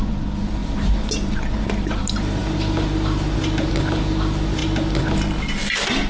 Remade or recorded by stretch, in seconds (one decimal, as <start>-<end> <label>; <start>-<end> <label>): 0.0-6.1 recorded